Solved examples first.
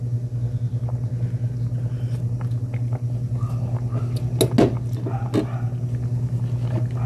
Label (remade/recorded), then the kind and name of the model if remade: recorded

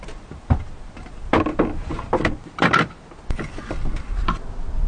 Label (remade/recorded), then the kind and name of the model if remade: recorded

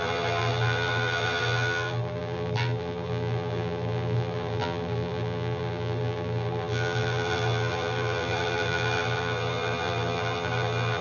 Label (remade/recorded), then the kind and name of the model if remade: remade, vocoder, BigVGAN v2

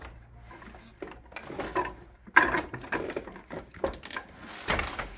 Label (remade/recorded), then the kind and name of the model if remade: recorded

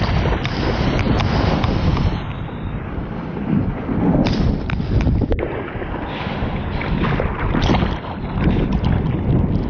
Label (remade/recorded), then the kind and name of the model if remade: recorded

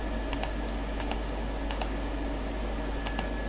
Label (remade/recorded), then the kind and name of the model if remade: recorded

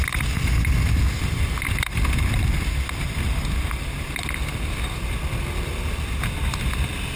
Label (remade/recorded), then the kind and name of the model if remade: recorded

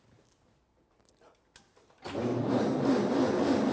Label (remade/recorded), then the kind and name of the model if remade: recorded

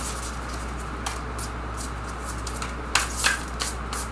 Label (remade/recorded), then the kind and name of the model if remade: recorded